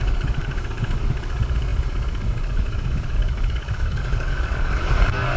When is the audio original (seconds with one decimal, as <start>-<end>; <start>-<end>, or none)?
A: none